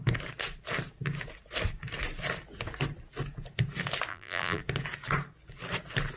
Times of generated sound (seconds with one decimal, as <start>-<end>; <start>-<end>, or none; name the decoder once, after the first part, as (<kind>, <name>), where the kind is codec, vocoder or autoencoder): 4.1-4.6 (vocoder, BigVGAN v2)